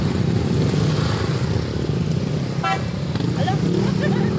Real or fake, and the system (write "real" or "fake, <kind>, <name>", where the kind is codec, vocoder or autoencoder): real